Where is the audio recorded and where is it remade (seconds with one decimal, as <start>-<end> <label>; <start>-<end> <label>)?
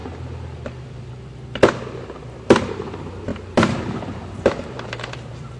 0.0-2.7 recorded; 2.7-5.6 remade